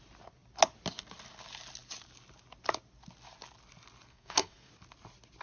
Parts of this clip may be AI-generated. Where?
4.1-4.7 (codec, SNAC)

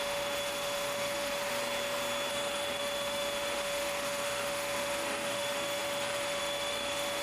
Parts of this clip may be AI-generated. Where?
0.0-1.5 (autoencoder, DAC-VAE); 2.3-7.2

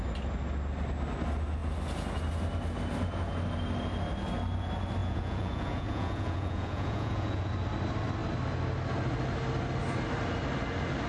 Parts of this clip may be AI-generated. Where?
5.0-7.5 (vocoder, Vocos)

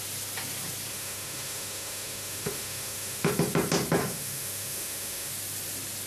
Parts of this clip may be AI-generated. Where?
0.9-3.3 (autoencoder, DAC-VAE); 4.0-5.3

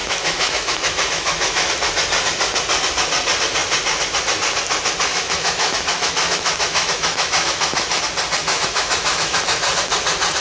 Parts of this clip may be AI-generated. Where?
0.0-1.7 (autoencoder, DAC-VAE); 5.1-8.0; 8.4-9.4

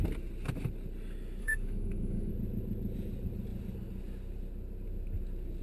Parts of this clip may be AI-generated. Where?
1.4-2.3 (autoencoder, DAC-VAE)